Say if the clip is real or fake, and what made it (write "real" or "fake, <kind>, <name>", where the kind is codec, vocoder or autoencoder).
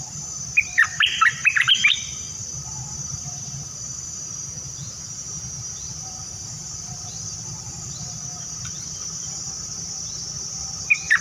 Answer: fake, vocoder, BigVGAN v2